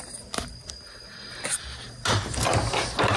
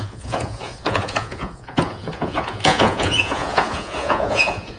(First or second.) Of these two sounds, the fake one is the second